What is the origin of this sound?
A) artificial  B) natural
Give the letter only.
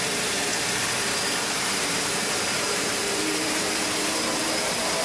A